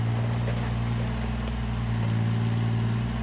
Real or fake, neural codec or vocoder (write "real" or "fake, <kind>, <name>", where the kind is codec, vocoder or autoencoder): real